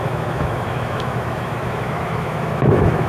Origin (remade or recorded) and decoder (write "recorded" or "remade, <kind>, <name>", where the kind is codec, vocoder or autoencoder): remade, autoencoder, DAC-VAE